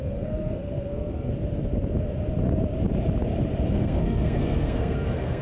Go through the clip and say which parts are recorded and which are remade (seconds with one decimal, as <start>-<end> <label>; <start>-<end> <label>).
0.0-1.3 remade; 1.3-3.7 recorded; 3.7-5.4 remade